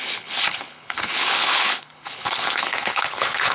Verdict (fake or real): fake